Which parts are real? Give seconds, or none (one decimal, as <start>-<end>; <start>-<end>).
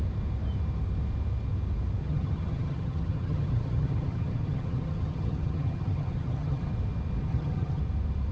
0.0-2.0; 6.7-7.3; 7.8-8.3